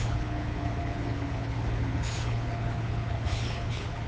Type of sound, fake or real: fake